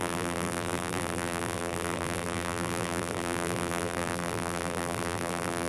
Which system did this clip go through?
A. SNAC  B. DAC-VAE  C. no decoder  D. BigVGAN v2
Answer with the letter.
D